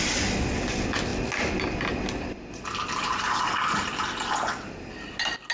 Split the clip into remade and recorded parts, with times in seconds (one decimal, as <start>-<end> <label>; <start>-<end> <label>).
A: 0.0-5.5 recorded